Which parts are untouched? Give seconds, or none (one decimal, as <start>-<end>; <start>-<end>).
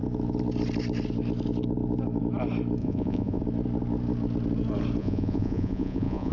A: 0.0-2.8; 3.4-5.0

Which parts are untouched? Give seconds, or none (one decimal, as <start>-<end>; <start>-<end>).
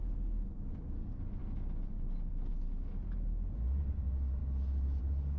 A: 0.0-5.4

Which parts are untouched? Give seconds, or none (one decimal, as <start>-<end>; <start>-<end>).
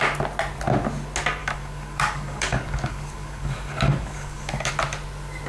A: 0.0-1.4; 4.7-5.5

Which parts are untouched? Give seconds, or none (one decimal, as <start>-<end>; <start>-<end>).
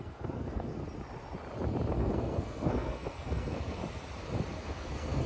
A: 0.8-1.9; 3.8-4.6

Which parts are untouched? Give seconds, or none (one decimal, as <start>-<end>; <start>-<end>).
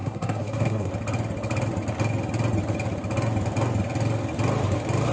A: 0.9-5.1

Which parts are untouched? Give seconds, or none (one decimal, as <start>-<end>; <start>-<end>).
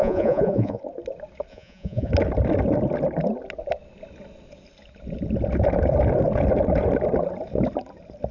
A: 0.8-1.5; 2.1-8.3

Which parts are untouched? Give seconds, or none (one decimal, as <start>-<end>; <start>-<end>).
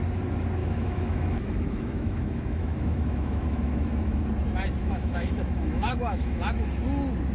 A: 0.0-0.6; 4.2-4.8; 6.4-7.3